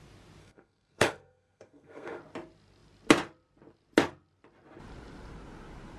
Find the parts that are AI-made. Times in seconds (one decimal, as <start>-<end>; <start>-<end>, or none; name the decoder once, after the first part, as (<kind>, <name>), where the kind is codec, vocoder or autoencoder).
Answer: 0.4-2.2 (codec, SNAC)